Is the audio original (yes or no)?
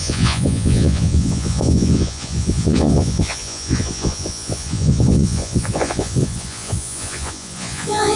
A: no